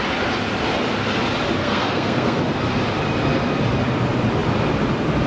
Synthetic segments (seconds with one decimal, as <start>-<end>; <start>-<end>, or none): 1.6-2.4